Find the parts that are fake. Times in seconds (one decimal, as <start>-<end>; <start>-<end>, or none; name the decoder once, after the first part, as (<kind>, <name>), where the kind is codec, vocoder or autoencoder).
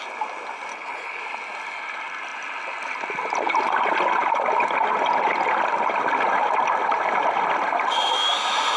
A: 0.7-1.2 (codec, HILCodec)